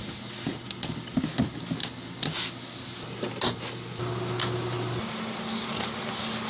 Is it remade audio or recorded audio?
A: recorded